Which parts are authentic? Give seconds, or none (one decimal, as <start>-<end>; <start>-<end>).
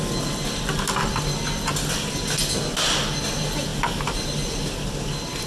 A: 0.0-5.5